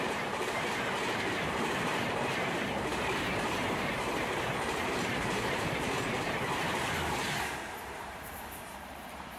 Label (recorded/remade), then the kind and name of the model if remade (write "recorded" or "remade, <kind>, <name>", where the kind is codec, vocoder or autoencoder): remade, vocoder, BigVGAN v2